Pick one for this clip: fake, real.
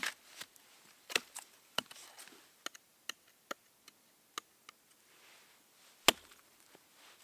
real